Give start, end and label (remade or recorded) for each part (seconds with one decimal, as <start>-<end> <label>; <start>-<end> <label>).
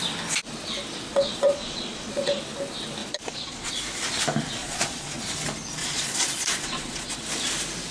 0.0-1.1 recorded; 1.1-2.4 remade; 2.4-3.0 recorded; 3.0-3.7 remade; 3.7-4.6 recorded; 4.6-5.2 remade; 5.2-5.8 recorded; 5.8-7.1 remade; 7.1-7.9 recorded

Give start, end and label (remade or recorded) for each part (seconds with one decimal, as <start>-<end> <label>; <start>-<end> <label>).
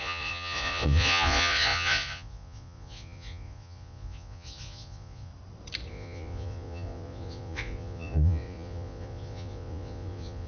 0.0-5.3 remade; 5.3-5.9 recorded; 5.9-10.5 remade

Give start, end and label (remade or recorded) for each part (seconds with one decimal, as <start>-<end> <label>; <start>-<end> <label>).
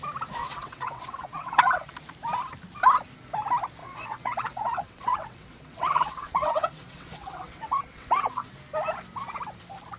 0.0-0.4 recorded; 0.4-1.9 remade; 1.9-3.8 recorded; 3.8-8.5 remade; 8.5-10.0 recorded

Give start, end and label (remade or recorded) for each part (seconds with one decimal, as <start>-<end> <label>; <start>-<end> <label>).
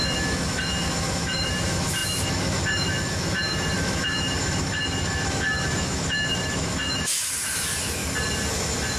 0.0-8.0 remade; 8.0-8.5 recorded; 8.5-9.0 remade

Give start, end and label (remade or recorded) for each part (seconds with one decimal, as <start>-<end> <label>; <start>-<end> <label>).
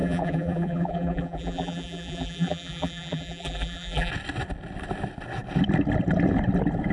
0.0-4.1 remade; 4.1-6.9 recorded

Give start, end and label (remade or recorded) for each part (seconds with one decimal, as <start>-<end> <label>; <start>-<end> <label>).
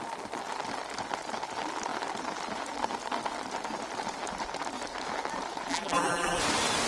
0.0-5.7 recorded; 5.7-6.4 remade; 6.4-6.9 recorded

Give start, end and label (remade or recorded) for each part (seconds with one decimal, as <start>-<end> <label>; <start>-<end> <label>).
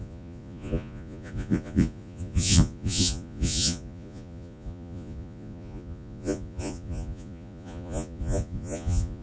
0.0-9.2 remade